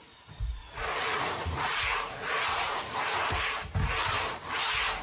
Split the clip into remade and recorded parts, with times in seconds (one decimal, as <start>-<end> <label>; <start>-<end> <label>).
0.0-3.0 remade; 3.0-5.0 recorded

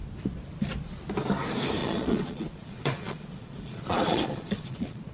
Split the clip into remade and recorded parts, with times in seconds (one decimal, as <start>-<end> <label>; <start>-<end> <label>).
0.0-1.8 recorded; 1.8-5.1 remade

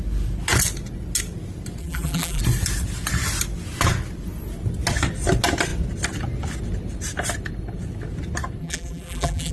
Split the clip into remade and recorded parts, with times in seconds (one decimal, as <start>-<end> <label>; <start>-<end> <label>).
0.0-1.8 recorded; 1.8-2.4 remade; 2.4-8.6 recorded; 8.6-9.5 remade

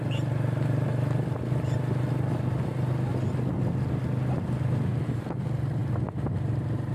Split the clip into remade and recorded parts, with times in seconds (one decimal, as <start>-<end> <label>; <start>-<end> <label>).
0.0-6.9 recorded

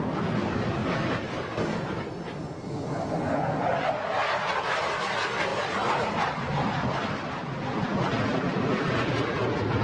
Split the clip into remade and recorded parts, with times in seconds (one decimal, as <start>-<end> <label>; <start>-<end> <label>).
0.0-4.2 recorded; 4.2-5.0 remade; 5.0-5.5 recorded; 5.5-7.3 remade; 7.3-9.8 recorded

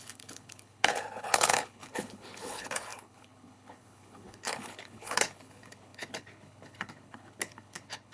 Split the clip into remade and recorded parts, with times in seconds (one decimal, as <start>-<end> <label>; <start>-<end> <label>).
0.0-8.1 remade